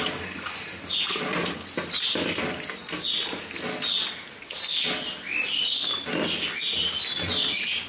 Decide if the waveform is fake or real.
real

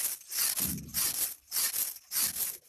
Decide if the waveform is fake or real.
real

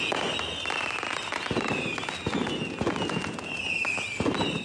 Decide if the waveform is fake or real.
real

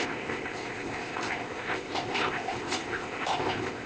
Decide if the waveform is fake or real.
fake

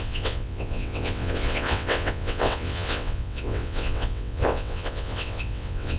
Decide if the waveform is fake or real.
fake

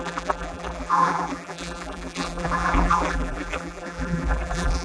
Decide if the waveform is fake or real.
fake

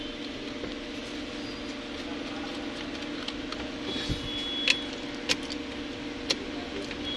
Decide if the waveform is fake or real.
real